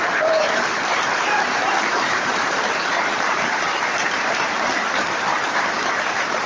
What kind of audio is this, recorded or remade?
remade